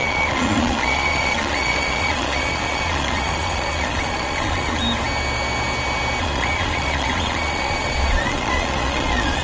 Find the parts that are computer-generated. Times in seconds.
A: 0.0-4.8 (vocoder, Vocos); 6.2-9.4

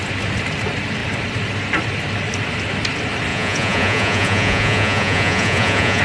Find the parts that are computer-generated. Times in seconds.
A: 3.3-6.0 (vocoder, Vocos)